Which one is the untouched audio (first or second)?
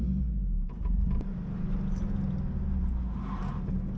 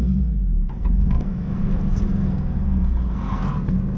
first